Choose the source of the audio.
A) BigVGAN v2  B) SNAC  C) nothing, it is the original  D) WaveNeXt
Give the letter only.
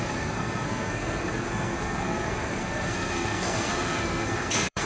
B